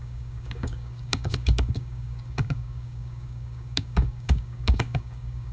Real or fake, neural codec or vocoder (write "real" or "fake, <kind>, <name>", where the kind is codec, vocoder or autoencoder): fake, codec, DAC